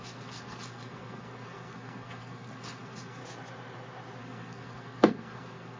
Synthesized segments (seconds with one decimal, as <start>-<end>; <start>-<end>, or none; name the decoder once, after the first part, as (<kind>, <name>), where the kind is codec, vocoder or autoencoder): 0.0-3.2 (codec, SNAC); 4.2-5.8